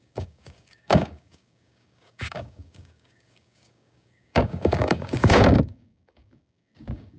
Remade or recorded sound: remade